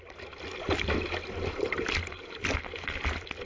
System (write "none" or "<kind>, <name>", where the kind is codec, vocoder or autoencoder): none